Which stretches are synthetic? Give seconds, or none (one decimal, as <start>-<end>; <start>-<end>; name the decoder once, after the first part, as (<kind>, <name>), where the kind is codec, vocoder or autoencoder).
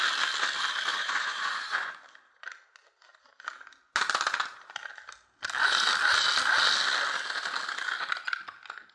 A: 0.9-2.0 (vocoder, Vocos)